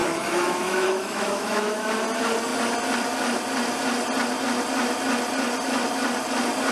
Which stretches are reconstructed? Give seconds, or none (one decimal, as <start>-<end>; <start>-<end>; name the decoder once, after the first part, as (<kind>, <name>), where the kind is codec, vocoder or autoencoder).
0.0-1.9 (autoencoder, DAC-VAE)